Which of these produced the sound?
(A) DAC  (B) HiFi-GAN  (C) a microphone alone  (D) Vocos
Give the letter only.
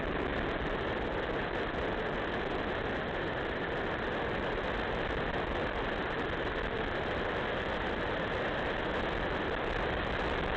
C